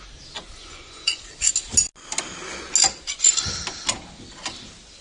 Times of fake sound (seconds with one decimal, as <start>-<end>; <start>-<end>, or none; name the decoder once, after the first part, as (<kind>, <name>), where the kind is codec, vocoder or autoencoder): 0.6-1.2 (vocoder, Vocos)